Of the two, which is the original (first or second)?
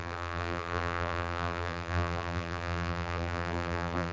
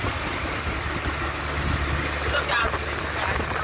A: second